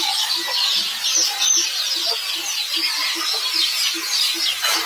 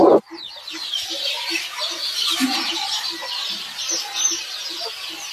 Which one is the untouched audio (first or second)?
first